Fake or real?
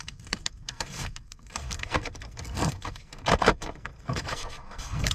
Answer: fake